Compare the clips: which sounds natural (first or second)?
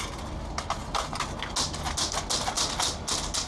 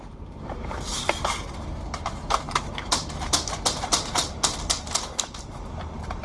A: first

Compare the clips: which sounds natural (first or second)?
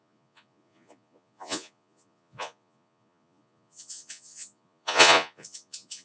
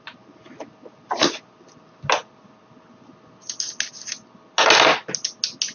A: second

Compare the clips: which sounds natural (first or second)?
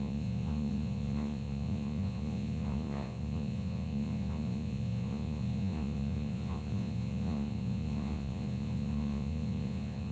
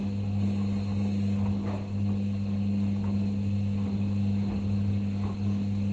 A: second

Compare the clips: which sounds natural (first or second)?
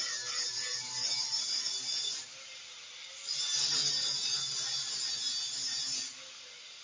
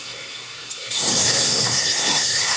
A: first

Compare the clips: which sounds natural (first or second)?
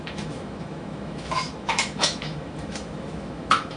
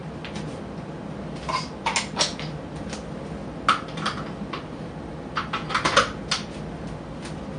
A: second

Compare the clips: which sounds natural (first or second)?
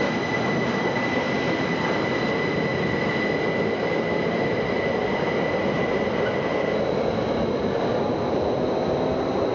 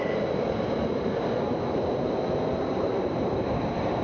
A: first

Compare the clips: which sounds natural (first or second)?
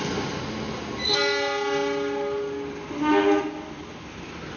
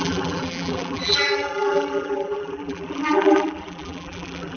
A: first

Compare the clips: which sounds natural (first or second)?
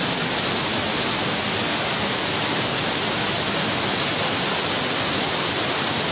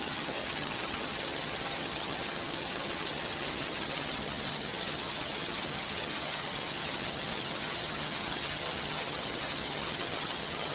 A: first